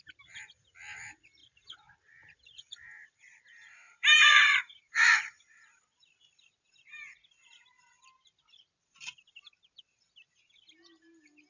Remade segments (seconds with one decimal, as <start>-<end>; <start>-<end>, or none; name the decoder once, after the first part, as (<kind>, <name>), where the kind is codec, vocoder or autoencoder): 1.4-6.2 (vocoder, BigVGAN v2)

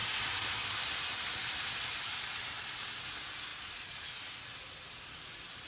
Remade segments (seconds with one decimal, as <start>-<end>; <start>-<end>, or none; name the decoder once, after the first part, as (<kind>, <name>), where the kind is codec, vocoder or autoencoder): 3.5-4.1 (vocoder, BigVGAN v2)

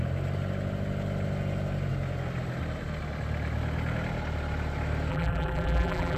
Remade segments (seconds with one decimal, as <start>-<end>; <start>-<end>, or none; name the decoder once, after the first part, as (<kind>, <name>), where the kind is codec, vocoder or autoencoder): 5.1-6.2 (vocoder, BigVGAN v2)

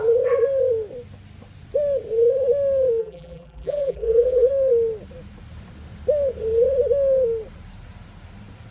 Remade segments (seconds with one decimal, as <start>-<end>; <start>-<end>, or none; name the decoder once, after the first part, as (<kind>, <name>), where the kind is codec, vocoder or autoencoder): 3.0-4.5 (vocoder, BigVGAN v2)

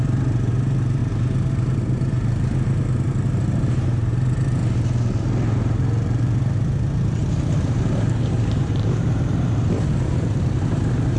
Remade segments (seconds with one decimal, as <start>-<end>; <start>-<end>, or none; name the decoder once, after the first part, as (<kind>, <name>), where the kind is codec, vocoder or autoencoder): 0.0-4.6 (vocoder, BigVGAN v2); 7.3-11.2